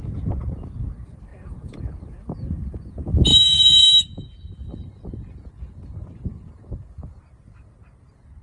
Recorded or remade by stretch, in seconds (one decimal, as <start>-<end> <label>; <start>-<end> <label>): 0.0-1.3 recorded; 1.3-1.8 remade; 1.8-3.3 recorded; 3.3-7.2 remade; 7.2-8.4 recorded